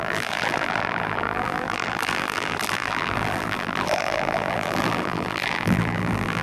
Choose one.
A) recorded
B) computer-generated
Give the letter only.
B